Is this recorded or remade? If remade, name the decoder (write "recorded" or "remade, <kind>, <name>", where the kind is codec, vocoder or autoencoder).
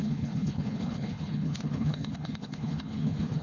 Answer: remade, codec, HILCodec